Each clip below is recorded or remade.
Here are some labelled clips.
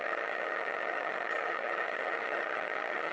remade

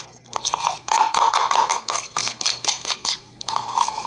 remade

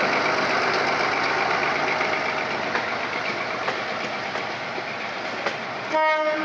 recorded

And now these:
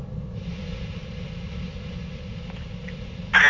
recorded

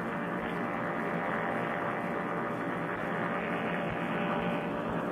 recorded